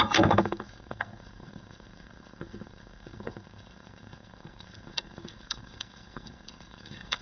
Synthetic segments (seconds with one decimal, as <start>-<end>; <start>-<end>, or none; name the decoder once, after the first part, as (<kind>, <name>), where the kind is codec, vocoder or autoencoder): 0.0-7.2 (codec, SNAC)